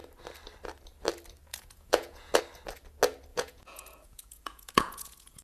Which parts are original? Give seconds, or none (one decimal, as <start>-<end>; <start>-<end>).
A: 0.0-1.5; 2.4-3.3